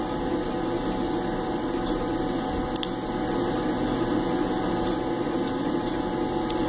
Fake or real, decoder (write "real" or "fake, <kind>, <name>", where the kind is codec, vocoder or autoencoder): real